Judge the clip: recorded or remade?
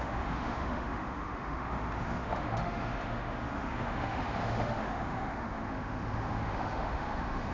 remade